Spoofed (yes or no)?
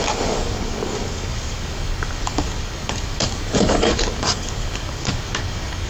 yes